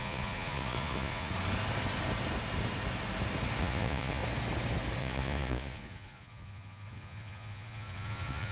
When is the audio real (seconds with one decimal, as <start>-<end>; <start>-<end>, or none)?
1.3-3.6; 4.2-5.0

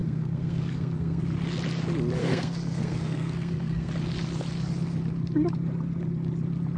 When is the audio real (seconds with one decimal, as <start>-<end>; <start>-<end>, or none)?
1.2-2.2; 3.9-6.8

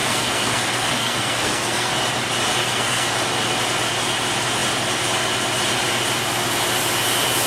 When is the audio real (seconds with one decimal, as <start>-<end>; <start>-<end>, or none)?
1.9-2.5; 3.1-7.5

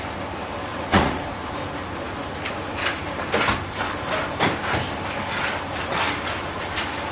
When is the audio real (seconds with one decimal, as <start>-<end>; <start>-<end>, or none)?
0.0-0.7; 1.2-7.1

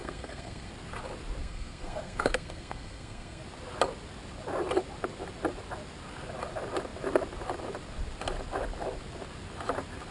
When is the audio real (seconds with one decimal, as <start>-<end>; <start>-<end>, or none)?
0.7-1.4; 3.4-10.1